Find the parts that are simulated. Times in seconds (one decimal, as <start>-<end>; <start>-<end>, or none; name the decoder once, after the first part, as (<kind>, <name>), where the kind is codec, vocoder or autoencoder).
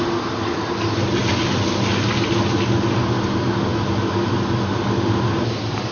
none